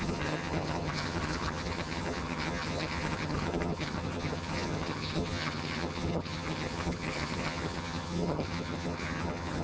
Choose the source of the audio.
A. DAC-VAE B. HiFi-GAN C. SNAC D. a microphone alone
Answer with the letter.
B